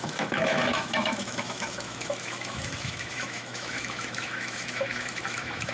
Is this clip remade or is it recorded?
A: remade